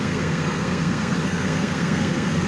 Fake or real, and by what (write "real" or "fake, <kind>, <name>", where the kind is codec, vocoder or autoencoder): fake, codec, SNAC